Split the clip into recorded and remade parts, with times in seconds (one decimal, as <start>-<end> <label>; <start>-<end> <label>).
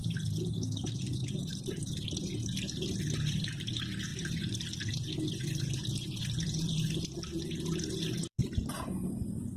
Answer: 0.0-2.4 remade; 2.4-3.0 recorded; 3.0-9.6 remade